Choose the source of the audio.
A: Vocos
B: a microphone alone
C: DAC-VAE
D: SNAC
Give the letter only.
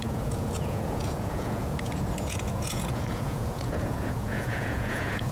A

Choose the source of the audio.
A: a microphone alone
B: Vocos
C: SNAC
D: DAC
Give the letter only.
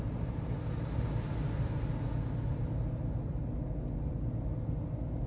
A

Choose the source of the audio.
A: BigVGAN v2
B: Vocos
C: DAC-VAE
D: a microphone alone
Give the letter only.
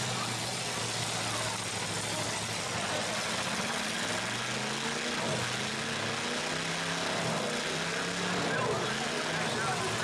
D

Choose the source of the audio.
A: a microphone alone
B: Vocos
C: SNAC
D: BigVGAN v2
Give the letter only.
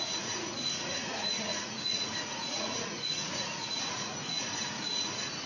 B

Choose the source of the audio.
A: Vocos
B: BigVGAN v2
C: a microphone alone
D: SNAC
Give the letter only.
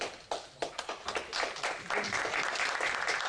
C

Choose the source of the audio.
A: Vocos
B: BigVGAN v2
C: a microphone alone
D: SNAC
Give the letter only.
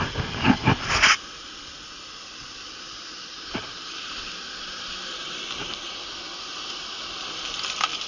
B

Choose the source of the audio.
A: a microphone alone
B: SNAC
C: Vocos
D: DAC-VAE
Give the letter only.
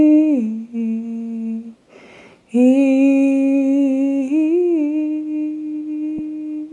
A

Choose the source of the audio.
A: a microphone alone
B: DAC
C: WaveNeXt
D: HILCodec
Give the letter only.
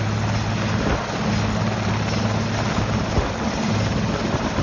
A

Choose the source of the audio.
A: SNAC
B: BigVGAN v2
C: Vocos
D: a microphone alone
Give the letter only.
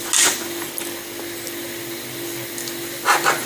D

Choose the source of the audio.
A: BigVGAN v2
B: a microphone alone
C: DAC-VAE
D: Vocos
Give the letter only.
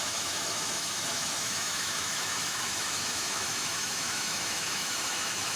C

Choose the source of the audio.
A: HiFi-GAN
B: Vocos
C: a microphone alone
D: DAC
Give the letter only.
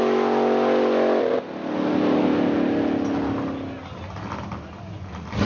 C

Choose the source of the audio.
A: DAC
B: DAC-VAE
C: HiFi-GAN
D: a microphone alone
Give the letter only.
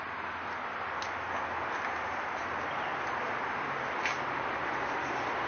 D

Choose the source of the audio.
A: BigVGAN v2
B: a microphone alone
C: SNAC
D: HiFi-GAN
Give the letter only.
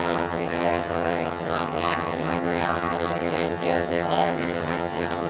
D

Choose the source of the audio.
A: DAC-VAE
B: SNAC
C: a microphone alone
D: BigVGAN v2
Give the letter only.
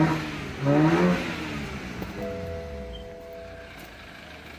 C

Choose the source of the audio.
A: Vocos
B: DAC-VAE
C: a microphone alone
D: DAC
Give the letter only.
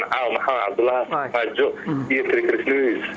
C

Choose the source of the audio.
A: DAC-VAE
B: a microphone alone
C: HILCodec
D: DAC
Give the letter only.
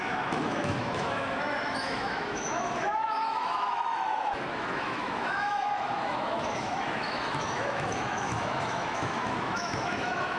A